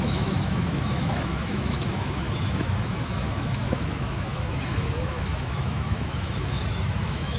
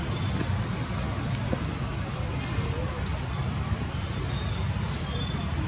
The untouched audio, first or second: second